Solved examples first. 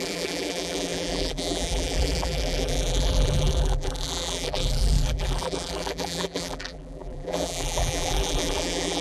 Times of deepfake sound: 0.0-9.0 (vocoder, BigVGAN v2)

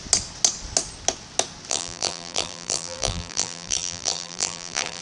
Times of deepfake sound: 1.7-5.0 (vocoder, BigVGAN v2)